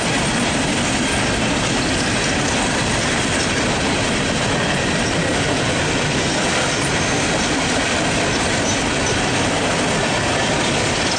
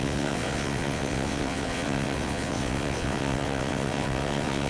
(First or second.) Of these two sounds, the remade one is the second